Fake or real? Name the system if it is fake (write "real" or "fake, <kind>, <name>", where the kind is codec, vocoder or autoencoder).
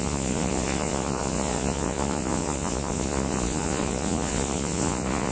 fake, vocoder, Vocos